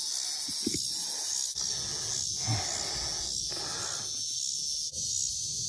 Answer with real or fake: real